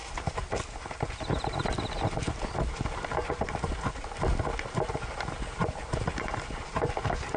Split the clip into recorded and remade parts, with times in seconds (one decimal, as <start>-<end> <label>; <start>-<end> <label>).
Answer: 0.0-7.4 recorded